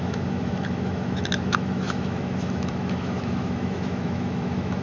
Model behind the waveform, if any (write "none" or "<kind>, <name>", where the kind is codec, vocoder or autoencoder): autoencoder, DAC-VAE